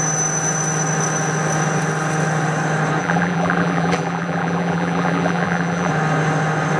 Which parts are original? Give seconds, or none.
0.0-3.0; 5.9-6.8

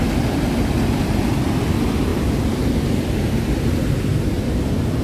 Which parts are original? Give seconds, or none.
0.0-2.1; 3.7-5.0

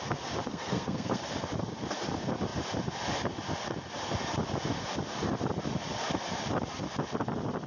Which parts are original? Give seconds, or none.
0.0-0.5; 1.2-7.7